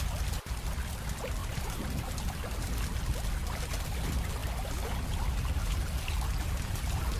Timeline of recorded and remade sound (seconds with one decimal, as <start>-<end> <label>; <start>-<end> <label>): 0.0-1.4 recorded; 1.4-2.1 remade; 2.1-7.2 recorded